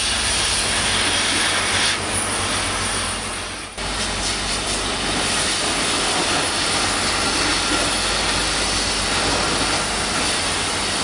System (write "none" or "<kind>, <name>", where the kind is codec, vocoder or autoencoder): none